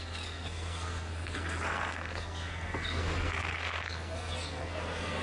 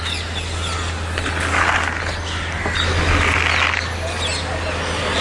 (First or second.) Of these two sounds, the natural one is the second